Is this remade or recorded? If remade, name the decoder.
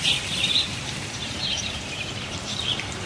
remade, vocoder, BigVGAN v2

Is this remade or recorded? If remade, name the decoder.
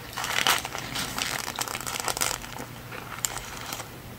remade, vocoder, BigVGAN v2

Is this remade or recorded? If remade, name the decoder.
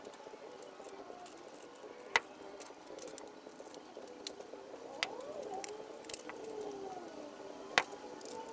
recorded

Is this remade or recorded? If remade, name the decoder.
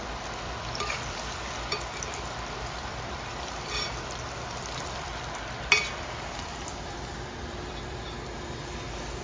remade, vocoder, BigVGAN v2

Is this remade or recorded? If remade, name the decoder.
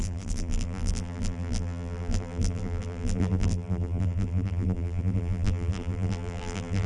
remade, vocoder, BigVGAN v2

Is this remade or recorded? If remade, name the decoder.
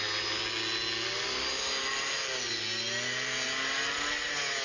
recorded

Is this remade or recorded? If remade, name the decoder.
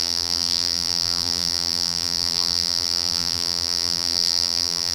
remade, vocoder, BigVGAN v2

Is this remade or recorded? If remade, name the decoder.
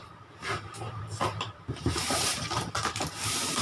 remade, vocoder, BigVGAN v2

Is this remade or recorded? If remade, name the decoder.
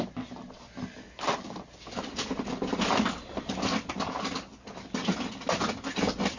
recorded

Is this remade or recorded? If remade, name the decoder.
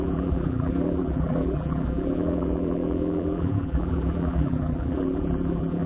remade, vocoder, BigVGAN v2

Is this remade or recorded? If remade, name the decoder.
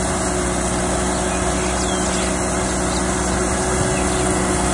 recorded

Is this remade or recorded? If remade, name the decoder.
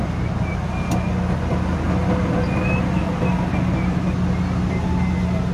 recorded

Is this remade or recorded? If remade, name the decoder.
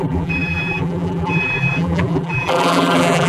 remade, vocoder, BigVGAN v2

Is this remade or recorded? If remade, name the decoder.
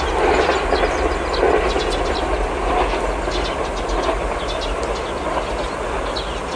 recorded